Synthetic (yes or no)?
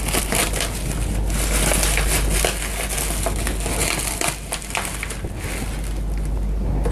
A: no